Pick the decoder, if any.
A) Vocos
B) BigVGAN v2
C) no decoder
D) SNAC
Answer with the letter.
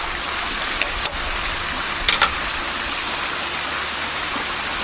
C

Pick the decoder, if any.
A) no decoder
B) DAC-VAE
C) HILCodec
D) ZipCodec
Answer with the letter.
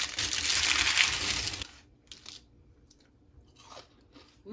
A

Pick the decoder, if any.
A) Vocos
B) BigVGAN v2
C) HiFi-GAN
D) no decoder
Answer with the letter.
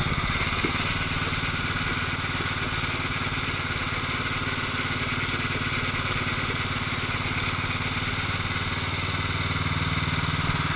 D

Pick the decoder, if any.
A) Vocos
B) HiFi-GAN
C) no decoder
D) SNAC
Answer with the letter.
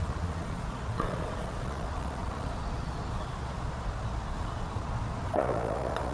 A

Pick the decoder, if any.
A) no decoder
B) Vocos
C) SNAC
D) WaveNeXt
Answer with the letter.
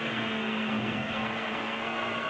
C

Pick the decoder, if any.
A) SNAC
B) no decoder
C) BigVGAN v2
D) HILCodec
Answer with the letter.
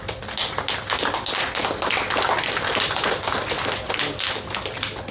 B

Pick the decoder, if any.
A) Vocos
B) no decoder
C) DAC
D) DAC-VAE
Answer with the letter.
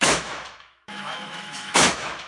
D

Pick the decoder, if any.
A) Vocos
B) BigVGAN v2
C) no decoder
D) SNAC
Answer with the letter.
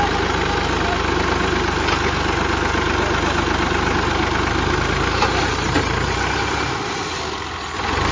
C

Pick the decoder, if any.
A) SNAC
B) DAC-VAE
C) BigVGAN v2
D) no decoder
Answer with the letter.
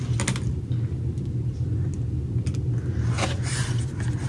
D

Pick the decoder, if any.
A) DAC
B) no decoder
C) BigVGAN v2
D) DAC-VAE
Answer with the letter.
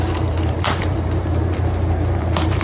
C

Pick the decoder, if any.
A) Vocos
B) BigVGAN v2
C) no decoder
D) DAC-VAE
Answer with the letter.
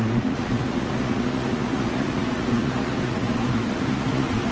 A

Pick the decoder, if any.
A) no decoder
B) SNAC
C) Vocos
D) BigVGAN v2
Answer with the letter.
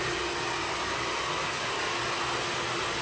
A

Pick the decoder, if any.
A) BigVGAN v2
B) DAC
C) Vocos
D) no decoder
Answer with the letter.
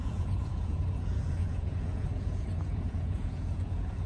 C